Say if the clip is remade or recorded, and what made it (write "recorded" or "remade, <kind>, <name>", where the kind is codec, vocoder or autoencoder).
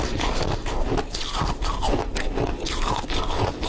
recorded